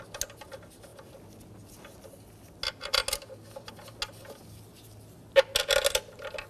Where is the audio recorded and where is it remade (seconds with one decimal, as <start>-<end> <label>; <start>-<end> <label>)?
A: 0.0-6.5 recorded